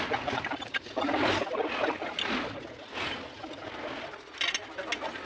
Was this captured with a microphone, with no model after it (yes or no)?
yes